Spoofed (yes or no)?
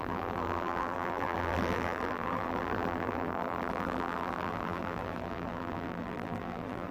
yes